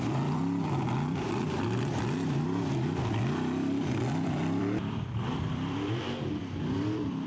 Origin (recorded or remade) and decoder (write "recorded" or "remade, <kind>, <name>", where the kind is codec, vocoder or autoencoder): remade, vocoder, BigVGAN v2